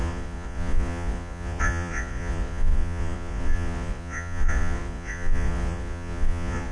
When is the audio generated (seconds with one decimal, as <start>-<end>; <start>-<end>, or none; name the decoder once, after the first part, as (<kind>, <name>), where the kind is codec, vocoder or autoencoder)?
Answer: 0.0-6.7 (vocoder, Vocos)